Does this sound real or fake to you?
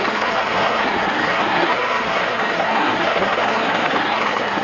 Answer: fake